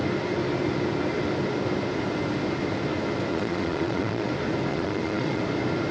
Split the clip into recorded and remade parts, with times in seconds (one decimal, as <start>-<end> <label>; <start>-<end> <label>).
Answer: 0.0-3.3 recorded; 3.3-4.3 remade; 4.3-4.7 recorded; 4.7-5.4 remade; 5.4-5.9 recorded